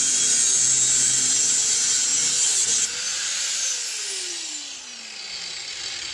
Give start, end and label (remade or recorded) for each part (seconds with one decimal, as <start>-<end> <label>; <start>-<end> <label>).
0.0-6.1 recorded